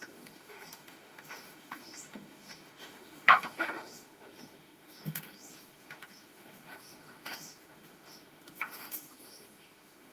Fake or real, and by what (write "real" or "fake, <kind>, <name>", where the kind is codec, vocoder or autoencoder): fake, autoencoder, DAC-VAE